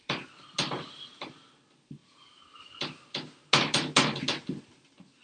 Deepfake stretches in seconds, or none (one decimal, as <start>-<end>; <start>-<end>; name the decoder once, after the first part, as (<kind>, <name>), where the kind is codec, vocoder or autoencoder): none